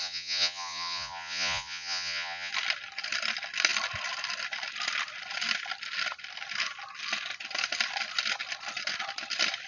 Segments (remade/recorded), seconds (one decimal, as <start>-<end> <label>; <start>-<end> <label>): 0.0-2.5 remade; 2.5-9.7 recorded

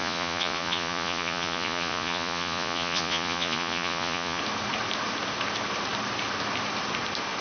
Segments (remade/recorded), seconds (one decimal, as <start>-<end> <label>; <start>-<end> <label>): 0.0-4.4 remade; 4.4-7.4 recorded

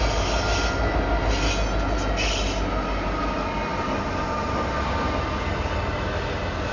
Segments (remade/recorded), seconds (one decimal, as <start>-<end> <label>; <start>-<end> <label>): 0.0-6.7 recorded